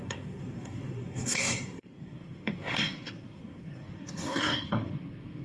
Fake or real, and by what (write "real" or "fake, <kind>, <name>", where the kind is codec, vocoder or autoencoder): fake, codec, SNAC